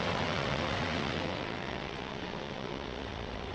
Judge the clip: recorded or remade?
remade